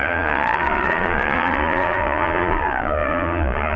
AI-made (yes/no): yes